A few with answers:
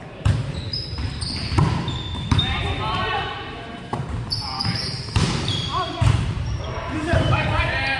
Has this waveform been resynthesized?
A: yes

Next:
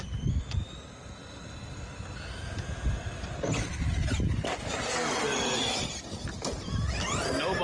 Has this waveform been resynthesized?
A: no